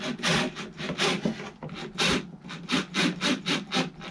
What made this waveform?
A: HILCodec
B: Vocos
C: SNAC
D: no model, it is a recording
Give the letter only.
D